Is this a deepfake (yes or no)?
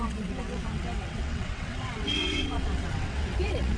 yes